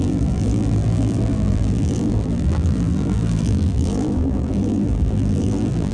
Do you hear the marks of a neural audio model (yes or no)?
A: yes